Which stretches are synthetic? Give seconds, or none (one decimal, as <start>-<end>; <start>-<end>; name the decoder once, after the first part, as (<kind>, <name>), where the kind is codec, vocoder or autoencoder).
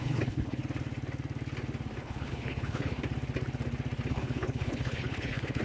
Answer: 0.0-0.6 (codec, HILCodec); 2.0-3.0; 4.1-5.6